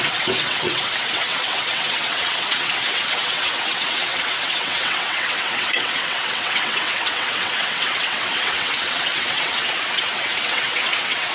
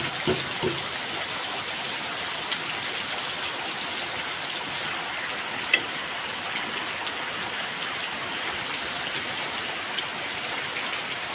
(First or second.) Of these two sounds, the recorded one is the second